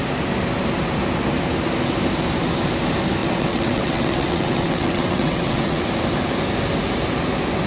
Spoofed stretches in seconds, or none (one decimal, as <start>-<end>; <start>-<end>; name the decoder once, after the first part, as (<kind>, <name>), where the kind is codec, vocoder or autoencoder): 3.2-5.9 (vocoder, WaveNeXt)